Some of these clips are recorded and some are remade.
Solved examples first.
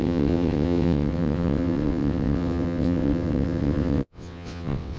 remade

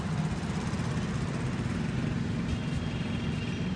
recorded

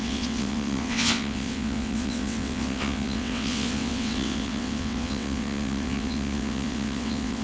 remade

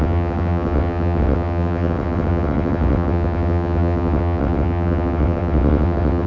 remade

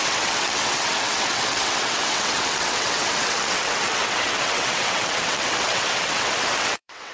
remade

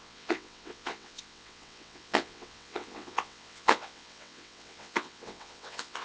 remade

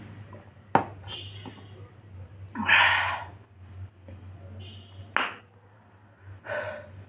recorded